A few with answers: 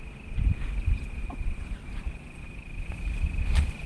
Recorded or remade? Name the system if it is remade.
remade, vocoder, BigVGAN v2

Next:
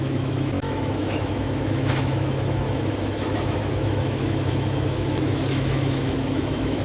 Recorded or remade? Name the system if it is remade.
remade, autoencoder, DAC-VAE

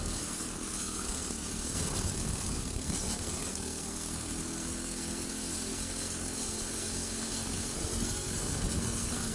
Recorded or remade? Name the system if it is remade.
remade, codec, SNAC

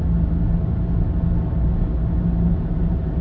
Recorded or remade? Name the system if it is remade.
recorded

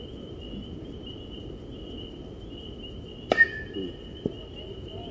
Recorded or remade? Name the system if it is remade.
recorded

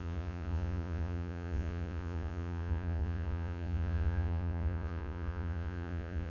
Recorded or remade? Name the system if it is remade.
remade, vocoder, Vocos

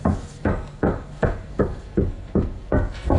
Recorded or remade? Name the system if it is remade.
remade, codec, SNAC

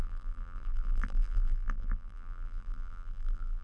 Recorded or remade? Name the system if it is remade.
remade, vocoder, BigVGAN v2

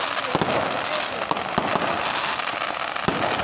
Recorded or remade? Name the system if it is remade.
recorded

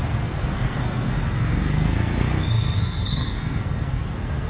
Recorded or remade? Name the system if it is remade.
remade, codec, SNAC